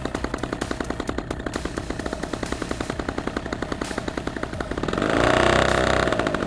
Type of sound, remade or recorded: recorded